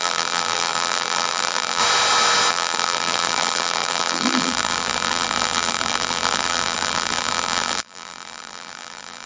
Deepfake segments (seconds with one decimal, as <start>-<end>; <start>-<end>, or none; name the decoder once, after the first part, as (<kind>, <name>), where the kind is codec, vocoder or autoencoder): 0.0-1.8 (vocoder, BigVGAN v2); 2.5-9.3